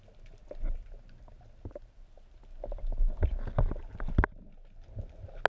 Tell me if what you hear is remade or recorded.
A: recorded